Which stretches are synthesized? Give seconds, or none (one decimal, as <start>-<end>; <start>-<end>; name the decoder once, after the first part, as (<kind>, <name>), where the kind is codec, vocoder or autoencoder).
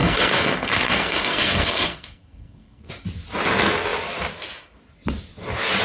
0.0-2.9 (codec, SNAC)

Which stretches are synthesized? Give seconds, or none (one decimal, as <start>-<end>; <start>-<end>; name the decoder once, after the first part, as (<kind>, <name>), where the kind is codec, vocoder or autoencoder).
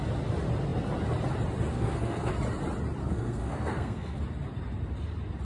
1.7-2.3 (codec, SNAC); 3.0-4.2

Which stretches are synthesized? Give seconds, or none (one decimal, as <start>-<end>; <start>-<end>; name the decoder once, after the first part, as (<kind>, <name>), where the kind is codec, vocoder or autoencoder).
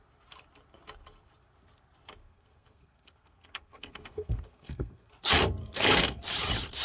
2.2-5.1 (codec, SNAC); 5.6-6.2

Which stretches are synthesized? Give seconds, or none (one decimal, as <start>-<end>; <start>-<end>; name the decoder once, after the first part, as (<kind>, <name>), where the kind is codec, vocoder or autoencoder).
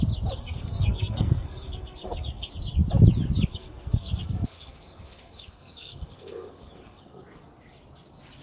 0.4-2.5 (codec, SNAC); 3.5-7.2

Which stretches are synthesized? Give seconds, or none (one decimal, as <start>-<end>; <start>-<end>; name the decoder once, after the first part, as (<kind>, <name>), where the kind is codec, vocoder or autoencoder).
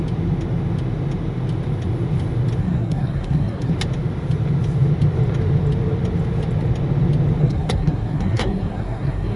2.6-3.7 (codec, SNAC); 7.4-9.4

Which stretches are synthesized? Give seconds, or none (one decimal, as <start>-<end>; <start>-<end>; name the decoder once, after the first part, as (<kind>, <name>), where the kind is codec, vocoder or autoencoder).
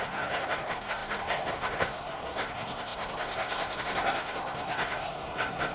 0.0-5.7 (codec, SNAC)